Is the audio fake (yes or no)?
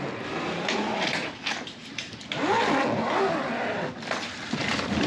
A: yes